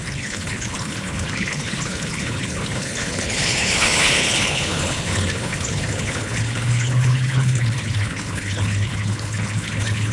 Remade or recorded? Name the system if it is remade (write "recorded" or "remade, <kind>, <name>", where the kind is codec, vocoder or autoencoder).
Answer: remade, codec, HILCodec